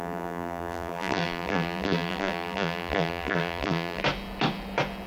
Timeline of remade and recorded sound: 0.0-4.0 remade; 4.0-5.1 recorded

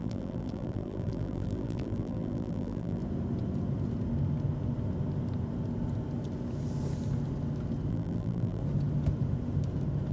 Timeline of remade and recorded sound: 0.0-3.0 remade; 3.0-7.9 recorded; 7.9-8.6 remade; 8.6-10.1 recorded

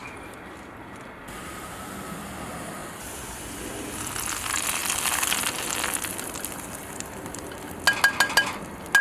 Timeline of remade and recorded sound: 0.0-2.8 recorded; 2.8-3.6 remade; 3.6-9.0 recorded

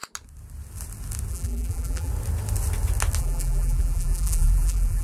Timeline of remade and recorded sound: 0.0-1.3 recorded; 1.3-2.1 remade; 2.1-3.2 recorded; 3.2-5.0 remade

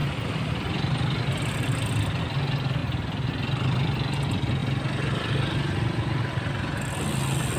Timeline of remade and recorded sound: 0.0-2.2 remade; 2.2-7.6 recorded

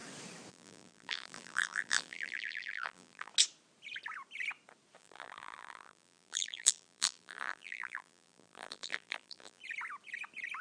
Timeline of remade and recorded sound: 0.0-0.5 recorded; 0.5-3.3 remade; 3.3-5.0 recorded; 5.0-9.6 remade; 9.6-10.6 recorded

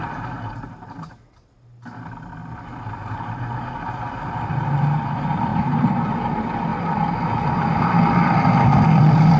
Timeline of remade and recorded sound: 0.0-5.5 recorded; 5.5-6.1 remade; 6.1-9.4 recorded